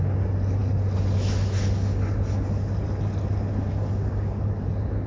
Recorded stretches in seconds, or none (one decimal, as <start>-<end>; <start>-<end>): 0.0-5.1